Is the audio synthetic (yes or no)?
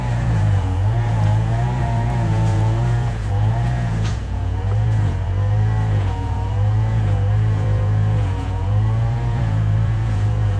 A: yes